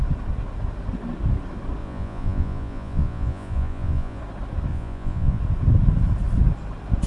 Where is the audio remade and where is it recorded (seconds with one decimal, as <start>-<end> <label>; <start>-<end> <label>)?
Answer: 0.0-1.8 recorded; 1.8-4.2 remade; 4.2-4.7 recorded; 4.7-5.4 remade; 5.4-7.1 recorded